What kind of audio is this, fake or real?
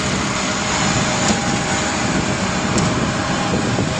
real